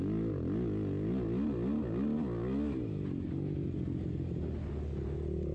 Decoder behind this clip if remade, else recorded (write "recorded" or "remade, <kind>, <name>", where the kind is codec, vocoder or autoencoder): recorded